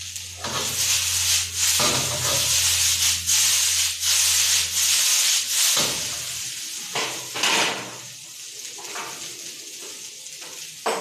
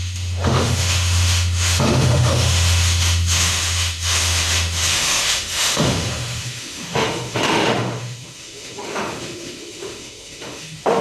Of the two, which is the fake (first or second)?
second